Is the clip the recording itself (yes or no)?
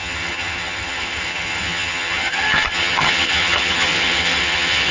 no